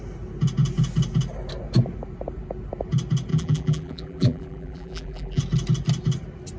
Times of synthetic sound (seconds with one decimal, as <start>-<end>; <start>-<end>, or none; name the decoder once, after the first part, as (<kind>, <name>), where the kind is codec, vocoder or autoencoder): 3.3-5.4 (vocoder, BigVGAN v2)